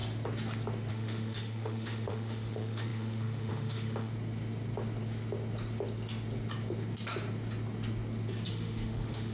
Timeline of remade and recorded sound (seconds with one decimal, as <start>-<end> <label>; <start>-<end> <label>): 0.0-0.9 recorded; 0.9-4.1 remade; 4.1-8.5 recorded; 8.5-9.3 remade